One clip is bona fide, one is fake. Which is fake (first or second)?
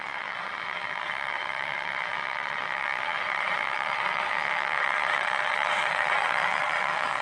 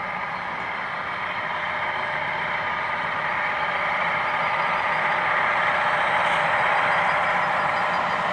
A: first